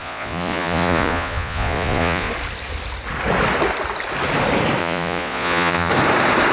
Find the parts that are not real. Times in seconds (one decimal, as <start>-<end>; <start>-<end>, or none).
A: 0.0-2.3; 4.8-5.9